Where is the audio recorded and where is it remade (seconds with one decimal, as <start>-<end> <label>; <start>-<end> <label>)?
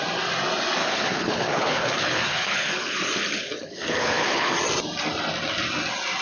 0.0-0.8 recorded; 0.8-4.5 remade; 4.5-6.2 recorded